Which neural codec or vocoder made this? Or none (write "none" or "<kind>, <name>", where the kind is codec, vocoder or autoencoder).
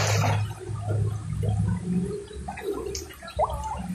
none